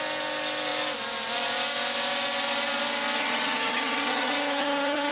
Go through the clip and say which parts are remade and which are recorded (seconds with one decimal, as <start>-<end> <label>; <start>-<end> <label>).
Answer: 0.0-3.2 recorded; 3.2-5.1 remade